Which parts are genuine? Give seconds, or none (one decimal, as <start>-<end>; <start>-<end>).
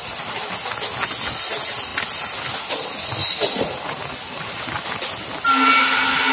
0.0-6.3